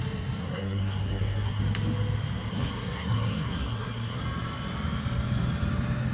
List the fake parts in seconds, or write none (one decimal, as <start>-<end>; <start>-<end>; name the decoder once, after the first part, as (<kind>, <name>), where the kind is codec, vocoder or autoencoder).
0.4-1.6 (codec, SNAC); 2.5-4.2